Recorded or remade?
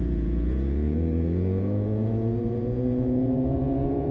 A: remade